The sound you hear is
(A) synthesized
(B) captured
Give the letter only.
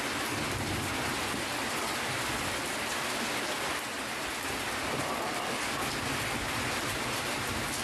B